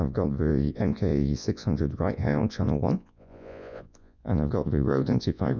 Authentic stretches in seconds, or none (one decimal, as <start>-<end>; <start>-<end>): none